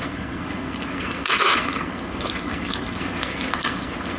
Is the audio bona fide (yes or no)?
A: no